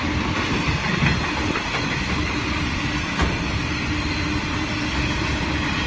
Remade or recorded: recorded